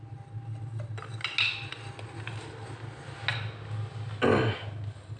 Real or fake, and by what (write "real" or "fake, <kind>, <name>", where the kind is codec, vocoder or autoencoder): real